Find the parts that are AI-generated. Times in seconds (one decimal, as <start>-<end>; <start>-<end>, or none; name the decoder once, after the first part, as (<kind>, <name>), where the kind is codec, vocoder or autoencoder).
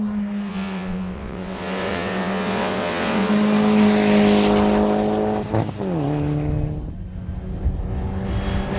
0.5-3.3 (vocoder, WaveNeXt)